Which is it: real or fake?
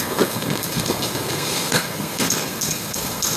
fake